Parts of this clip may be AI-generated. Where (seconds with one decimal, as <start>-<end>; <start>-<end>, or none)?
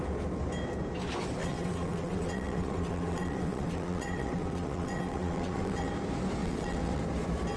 1.4-5.9; 6.4-7.0